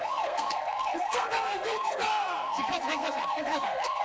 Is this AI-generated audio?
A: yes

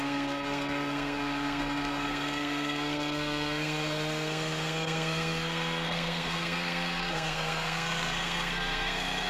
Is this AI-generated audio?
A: yes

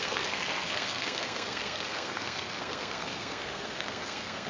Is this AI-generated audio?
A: yes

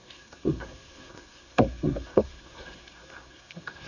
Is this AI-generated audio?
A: yes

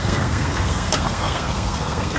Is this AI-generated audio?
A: yes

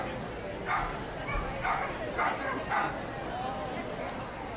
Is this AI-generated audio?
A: no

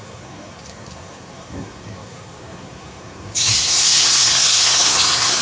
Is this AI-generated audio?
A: yes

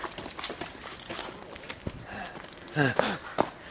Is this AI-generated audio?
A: no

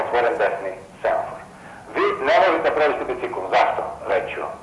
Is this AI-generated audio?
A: no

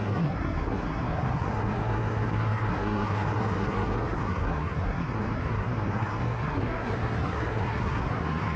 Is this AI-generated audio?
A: yes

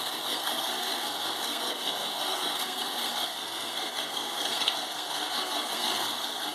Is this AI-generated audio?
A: yes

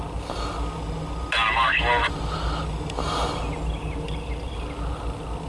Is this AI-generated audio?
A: no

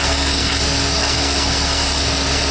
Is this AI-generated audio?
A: yes